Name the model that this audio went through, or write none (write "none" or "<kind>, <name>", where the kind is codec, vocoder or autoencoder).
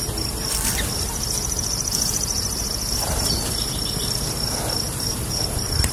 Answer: vocoder, BigVGAN v2